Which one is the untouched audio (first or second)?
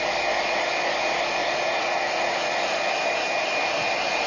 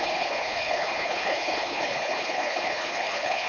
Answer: first